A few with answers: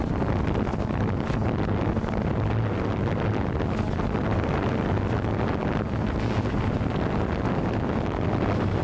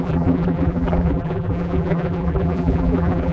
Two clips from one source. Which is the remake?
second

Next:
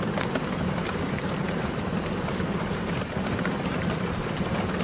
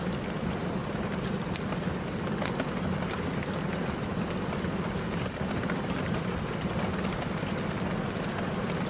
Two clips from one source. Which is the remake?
first